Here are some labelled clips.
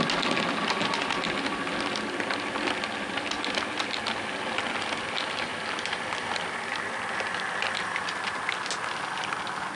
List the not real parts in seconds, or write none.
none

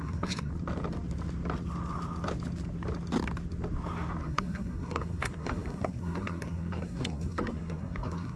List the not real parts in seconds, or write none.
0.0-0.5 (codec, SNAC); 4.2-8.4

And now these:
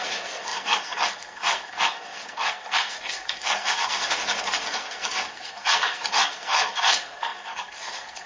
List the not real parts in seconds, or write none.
0.0-8.3 (codec, SNAC)

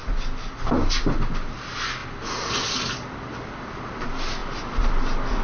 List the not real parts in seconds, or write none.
none